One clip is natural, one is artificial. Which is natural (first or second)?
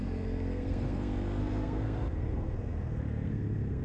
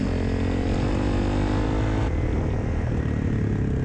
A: second